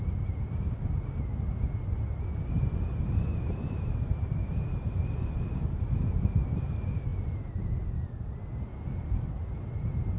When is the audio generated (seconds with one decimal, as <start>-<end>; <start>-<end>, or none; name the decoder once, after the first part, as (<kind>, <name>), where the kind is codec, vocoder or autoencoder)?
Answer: none